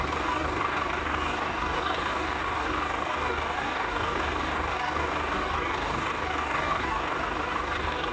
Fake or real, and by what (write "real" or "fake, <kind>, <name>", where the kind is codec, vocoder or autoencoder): fake, codec, DAC